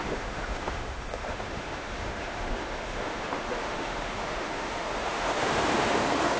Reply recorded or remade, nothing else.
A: remade